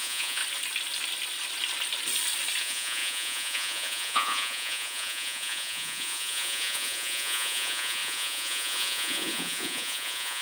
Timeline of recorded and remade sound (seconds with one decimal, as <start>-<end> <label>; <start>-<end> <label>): 0.0-0.4 remade; 0.4-2.6 recorded; 2.6-10.4 remade